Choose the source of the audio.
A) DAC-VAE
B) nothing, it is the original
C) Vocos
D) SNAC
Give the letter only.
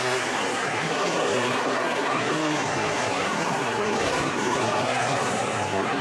D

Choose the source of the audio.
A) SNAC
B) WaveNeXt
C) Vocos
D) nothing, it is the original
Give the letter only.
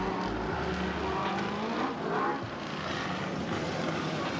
D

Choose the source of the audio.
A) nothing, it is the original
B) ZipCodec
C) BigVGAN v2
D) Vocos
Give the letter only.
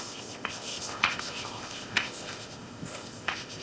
B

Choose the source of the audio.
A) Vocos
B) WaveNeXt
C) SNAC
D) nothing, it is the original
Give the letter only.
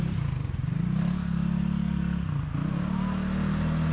D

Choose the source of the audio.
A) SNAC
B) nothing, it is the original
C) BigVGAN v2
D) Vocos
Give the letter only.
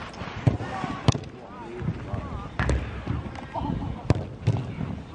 B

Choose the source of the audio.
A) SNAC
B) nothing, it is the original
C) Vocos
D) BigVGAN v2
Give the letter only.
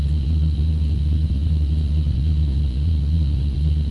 C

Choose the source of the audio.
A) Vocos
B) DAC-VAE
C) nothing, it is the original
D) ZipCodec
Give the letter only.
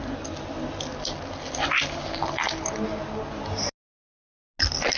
C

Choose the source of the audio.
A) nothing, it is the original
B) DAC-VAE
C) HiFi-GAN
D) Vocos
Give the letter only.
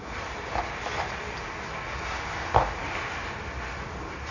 A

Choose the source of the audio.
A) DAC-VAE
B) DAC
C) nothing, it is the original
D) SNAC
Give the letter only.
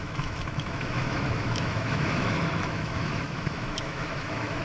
A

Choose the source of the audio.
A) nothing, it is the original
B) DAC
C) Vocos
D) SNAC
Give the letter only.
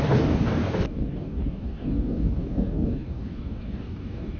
B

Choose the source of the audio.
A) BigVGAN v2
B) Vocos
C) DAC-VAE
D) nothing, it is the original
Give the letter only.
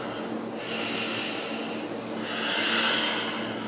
D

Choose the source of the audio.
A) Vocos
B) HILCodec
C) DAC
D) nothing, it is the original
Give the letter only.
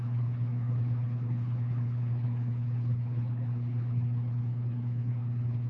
B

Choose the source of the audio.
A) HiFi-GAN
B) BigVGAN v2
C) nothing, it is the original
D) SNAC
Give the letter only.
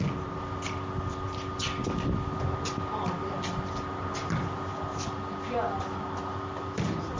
C